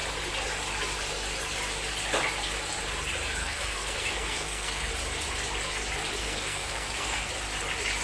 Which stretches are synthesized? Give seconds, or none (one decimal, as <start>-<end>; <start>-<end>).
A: 3.4-4.9; 6.2-7.3